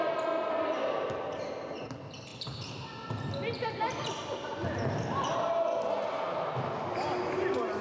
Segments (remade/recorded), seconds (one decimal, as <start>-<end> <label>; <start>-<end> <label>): 0.0-7.8 recorded